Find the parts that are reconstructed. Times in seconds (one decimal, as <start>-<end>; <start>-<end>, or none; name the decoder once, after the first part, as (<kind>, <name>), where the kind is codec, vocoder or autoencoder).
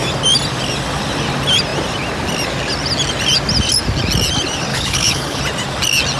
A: 4.7-5.4 (codec, HILCodec)